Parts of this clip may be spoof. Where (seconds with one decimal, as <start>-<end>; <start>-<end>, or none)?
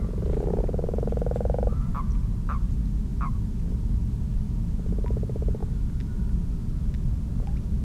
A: none